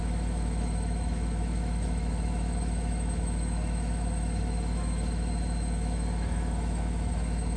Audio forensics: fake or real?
fake